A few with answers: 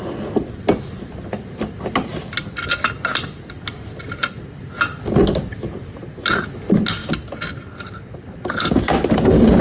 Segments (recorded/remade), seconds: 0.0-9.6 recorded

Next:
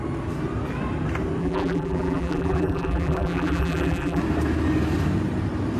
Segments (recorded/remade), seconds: 0.0-1.4 recorded; 1.4-4.2 remade; 4.2-5.8 recorded

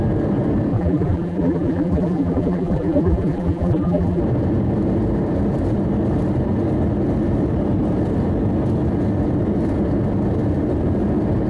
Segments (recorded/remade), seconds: 0.0-0.7 recorded; 0.7-4.2 remade; 4.2-11.5 recorded

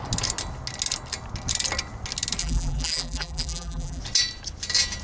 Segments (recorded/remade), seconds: 0.0-2.4 recorded; 2.4-4.0 remade; 4.0-5.0 recorded

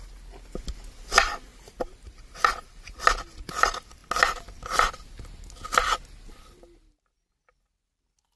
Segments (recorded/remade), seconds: 0.0-1.5 recorded; 1.5-3.0 remade; 3.0-8.4 recorded

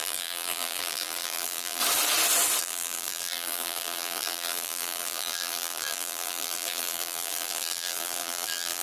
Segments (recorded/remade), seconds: 0.0-1.8 remade; 1.8-2.6 recorded; 2.6-8.8 remade

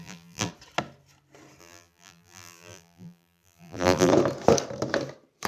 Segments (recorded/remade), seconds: 0.0-0.5 remade; 0.5-1.6 recorded; 1.6-4.1 remade; 4.1-5.5 recorded